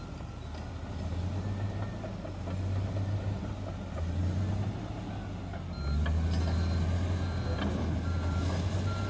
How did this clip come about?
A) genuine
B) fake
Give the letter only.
A